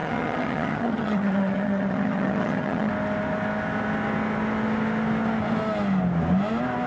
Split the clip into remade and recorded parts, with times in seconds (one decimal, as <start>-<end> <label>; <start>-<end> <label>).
0.0-2.9 remade; 2.9-6.9 recorded